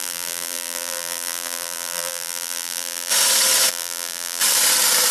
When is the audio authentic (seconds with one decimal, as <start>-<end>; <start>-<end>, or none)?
3.1-3.7; 4.4-5.1